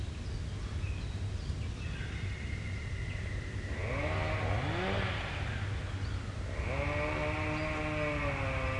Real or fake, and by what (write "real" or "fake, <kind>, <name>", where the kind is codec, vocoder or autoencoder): real